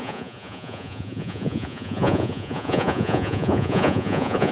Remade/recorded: remade